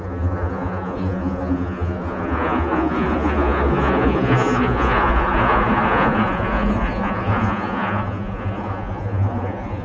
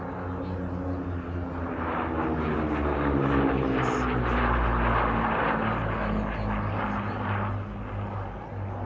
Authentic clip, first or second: second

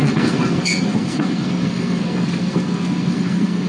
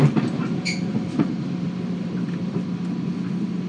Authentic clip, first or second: second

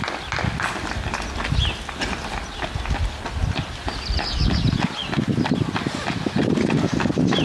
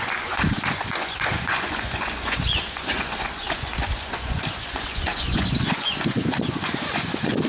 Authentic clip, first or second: first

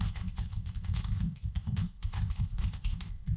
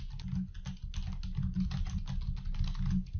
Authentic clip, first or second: second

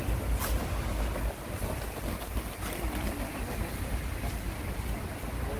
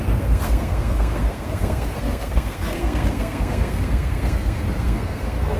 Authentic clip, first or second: first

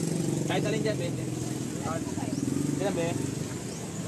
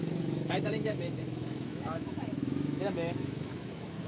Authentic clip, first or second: first